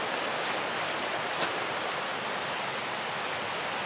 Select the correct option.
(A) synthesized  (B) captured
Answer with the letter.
B